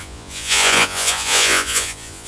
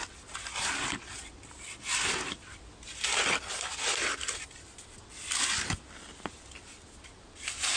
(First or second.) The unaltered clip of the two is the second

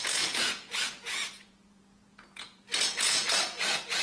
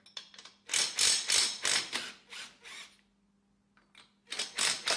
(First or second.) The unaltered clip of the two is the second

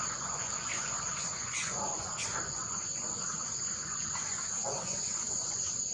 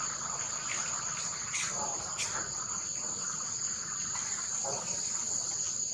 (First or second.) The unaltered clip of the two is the second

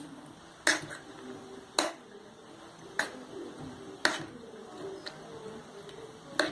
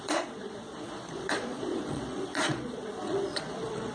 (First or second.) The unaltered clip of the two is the first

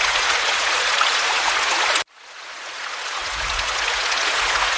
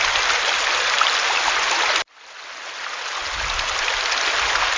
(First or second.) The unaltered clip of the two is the second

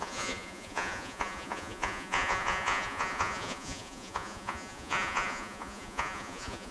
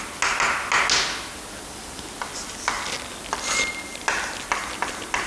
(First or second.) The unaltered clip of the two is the second